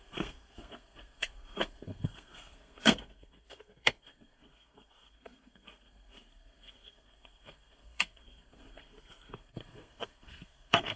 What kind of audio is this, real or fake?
fake